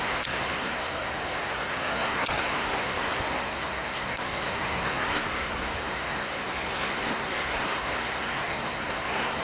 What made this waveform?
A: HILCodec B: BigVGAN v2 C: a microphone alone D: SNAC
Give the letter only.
D